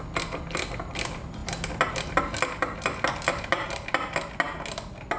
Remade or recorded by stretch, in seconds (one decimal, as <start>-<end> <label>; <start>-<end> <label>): 0.0-5.2 recorded